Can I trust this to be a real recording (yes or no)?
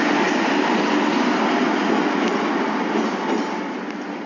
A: yes